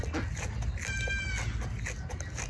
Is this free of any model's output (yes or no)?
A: yes